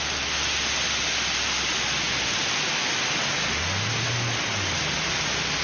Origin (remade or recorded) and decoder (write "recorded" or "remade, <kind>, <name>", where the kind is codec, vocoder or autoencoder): recorded